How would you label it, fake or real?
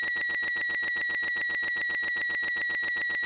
real